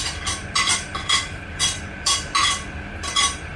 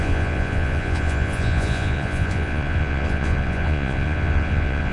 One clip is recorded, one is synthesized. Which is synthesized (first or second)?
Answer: second